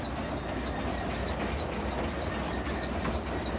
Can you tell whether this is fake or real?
real